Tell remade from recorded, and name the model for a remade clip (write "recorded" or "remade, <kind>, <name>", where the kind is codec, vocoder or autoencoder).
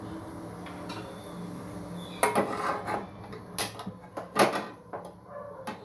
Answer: recorded